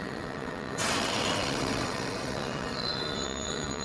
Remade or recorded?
remade